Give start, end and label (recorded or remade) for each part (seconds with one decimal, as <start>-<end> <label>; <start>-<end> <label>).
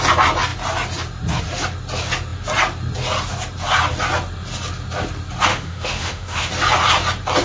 0.0-5.5 recorded; 5.5-6.5 remade; 6.5-7.4 recorded